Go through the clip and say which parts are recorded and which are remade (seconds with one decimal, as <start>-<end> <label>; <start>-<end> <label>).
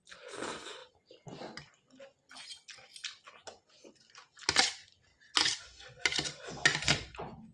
0.0-7.5 recorded